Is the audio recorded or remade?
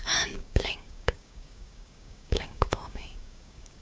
remade